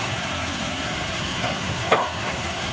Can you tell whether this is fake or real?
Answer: fake